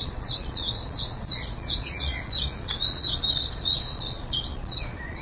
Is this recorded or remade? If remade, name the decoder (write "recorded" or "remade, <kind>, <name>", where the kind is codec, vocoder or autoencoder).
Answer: remade, vocoder, Vocos